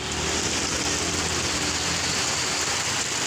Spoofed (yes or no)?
no